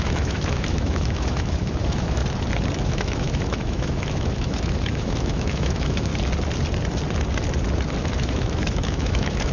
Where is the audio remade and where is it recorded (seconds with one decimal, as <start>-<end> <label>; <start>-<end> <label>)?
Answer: 0.0-2.2 remade; 2.2-2.8 recorded; 2.8-6.1 remade; 6.1-8.0 recorded; 8.0-9.5 remade

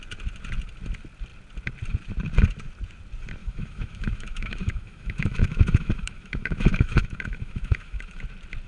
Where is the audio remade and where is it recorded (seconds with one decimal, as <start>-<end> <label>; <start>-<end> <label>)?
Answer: 0.0-3.4 recorded; 3.4-8.2 remade; 8.2-8.7 recorded

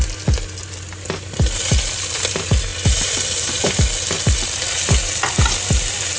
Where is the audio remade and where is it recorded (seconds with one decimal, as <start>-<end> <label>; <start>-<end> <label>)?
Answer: 0.0-6.2 recorded

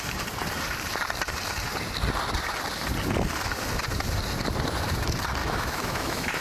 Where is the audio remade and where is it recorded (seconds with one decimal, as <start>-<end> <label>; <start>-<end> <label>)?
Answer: 0.0-5.4 recorded; 5.4-6.4 remade

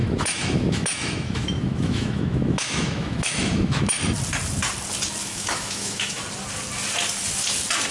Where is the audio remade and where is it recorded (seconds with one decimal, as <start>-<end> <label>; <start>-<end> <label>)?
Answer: 0.0-4.0 remade; 4.0-5.2 recorded; 5.2-6.2 remade; 6.2-7.9 recorded